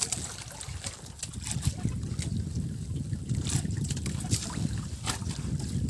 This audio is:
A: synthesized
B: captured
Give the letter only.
B